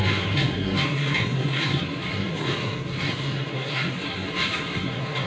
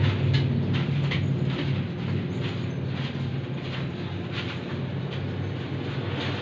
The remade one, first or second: first